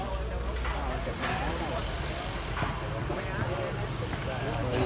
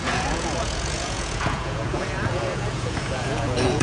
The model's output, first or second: second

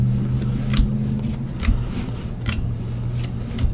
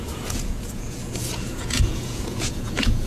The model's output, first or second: second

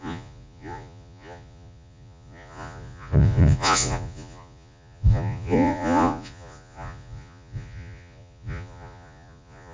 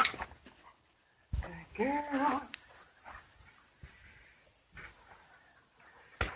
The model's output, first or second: first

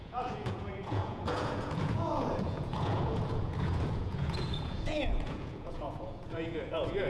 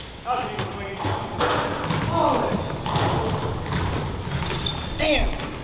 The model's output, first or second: first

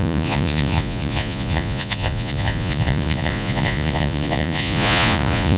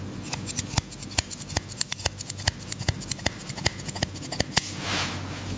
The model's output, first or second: first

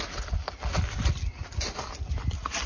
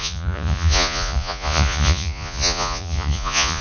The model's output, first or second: second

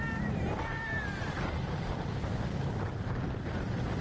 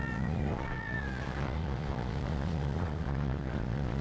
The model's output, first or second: second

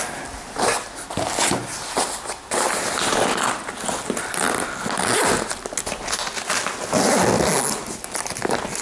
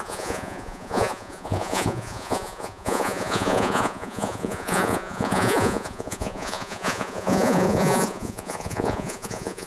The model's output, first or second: second